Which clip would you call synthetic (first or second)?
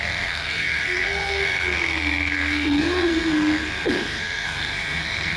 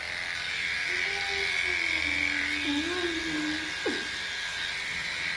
first